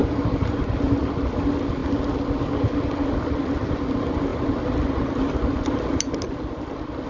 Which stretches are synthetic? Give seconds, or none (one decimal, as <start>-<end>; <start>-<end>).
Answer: 0.0-1.0